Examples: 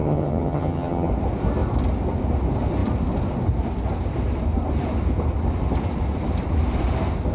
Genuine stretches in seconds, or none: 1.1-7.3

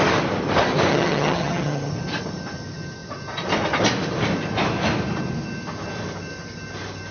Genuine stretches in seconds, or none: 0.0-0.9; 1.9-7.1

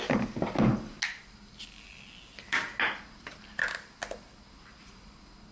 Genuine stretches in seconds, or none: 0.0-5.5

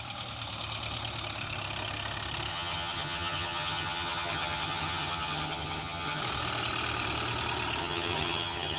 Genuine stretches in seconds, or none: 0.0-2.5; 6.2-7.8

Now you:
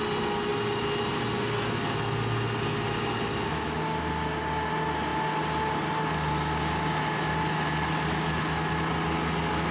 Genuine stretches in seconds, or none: 0.0-9.7

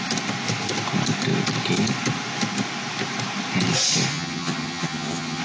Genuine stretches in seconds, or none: 0.0-4.1